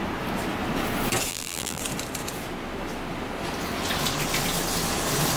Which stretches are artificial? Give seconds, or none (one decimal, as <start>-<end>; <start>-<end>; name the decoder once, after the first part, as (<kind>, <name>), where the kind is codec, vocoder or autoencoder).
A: 1.3-1.8 (vocoder, BigVGAN v2)